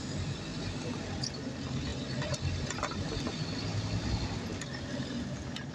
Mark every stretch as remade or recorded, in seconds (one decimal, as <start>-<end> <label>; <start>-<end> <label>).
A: 0.0-0.5 remade; 0.5-1.1 recorded; 1.1-1.9 remade; 1.9-5.3 recorded; 5.3-5.7 remade